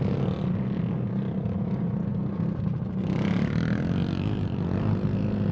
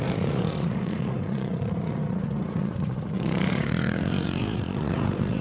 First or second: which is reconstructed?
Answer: second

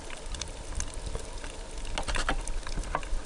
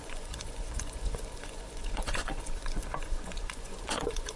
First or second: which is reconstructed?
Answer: second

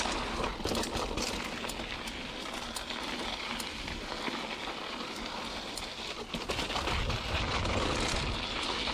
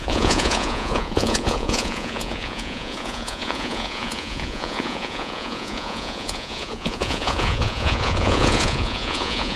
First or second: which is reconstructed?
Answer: second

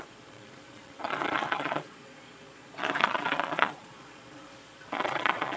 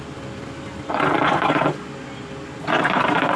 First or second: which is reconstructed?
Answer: first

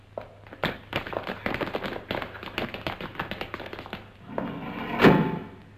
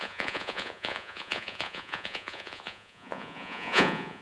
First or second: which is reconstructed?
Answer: second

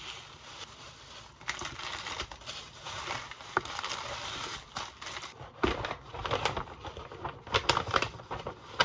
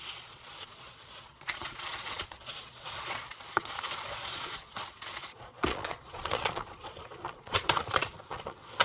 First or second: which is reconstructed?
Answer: second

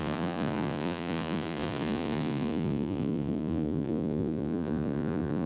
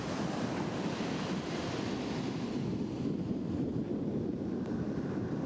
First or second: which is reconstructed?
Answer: first